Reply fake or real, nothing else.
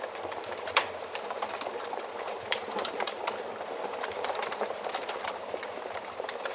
fake